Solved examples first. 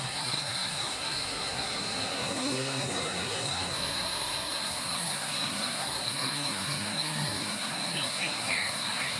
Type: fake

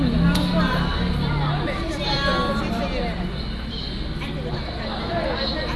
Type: real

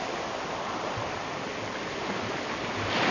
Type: real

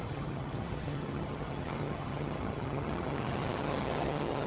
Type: fake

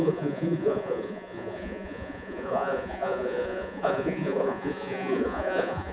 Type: fake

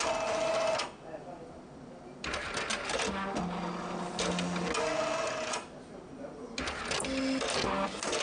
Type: real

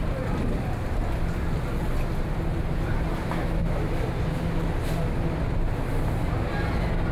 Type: real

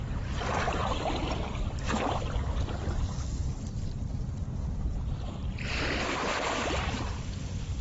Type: real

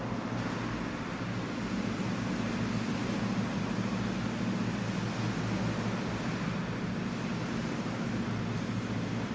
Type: real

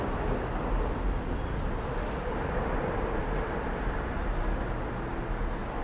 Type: real